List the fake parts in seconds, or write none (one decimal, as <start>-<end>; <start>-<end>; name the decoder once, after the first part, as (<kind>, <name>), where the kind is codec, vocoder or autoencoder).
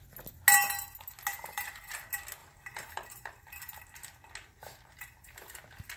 1.3-2.0 (vocoder, BigVGAN v2); 2.4-3.8; 4.5-5.6